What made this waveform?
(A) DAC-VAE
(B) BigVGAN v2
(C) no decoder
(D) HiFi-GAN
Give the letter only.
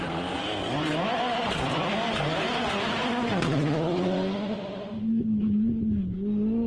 C